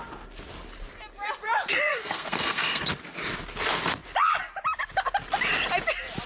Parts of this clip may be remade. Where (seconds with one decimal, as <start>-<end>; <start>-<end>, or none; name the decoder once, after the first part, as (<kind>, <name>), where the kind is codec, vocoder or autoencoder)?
1.9-2.8 (codec, SNAC)